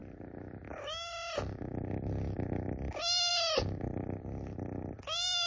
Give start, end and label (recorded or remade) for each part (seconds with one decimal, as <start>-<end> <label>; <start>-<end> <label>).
0.0-5.5 recorded